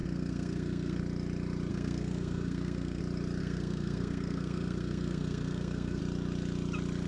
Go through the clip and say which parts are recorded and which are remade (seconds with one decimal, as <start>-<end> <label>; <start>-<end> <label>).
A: 0.0-1.0 remade; 1.0-1.7 recorded; 1.7-3.0 remade; 3.0-3.4 recorded; 3.4-6.0 remade; 6.0-7.1 recorded